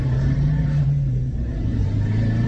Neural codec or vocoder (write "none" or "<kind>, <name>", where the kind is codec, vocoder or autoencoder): vocoder, BigVGAN v2